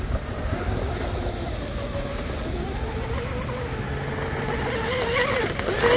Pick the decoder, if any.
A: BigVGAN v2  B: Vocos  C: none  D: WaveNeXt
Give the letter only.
C